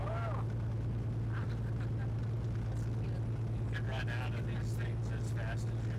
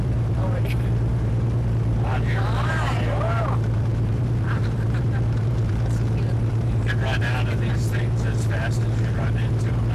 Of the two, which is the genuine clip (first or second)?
first